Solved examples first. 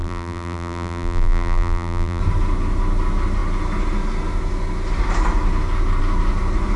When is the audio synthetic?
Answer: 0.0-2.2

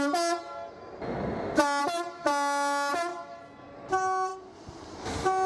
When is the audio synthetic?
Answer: none